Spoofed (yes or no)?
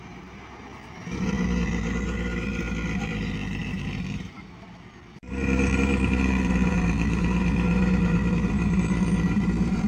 yes